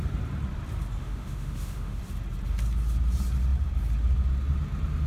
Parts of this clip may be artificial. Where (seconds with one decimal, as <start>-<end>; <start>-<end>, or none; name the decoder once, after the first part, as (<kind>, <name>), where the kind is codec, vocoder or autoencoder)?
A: 1.0-2.0 (autoencoder, DAC-VAE)